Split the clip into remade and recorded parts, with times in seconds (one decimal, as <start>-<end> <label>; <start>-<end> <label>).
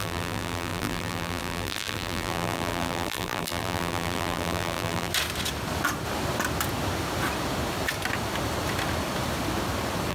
0.0-5.1 remade; 5.1-10.1 recorded